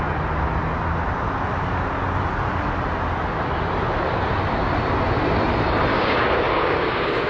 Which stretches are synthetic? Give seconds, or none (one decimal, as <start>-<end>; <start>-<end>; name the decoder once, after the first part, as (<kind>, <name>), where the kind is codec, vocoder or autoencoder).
5.9-7.3 (codec, DAC)